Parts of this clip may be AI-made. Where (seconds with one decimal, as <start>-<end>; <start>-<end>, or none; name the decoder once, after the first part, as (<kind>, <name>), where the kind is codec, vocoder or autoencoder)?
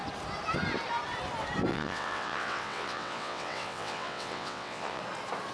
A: 1.7-5.0 (vocoder, WaveNeXt)